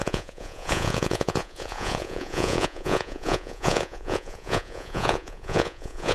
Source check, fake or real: fake